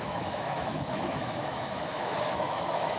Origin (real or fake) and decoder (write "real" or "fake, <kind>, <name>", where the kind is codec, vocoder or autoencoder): fake, autoencoder, DAC-VAE